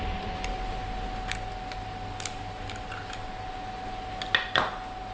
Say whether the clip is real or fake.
real